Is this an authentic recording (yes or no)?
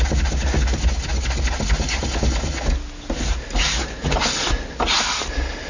yes